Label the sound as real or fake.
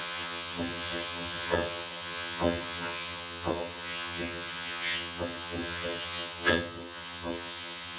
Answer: fake